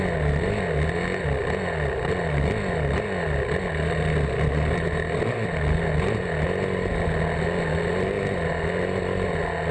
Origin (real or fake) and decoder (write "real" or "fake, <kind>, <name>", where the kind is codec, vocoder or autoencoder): real